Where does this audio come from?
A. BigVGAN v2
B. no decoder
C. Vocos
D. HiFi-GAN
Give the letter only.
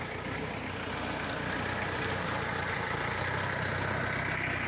B